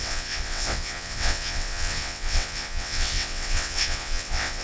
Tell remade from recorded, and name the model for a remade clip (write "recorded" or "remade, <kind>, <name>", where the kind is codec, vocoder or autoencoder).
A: remade, vocoder, WaveNeXt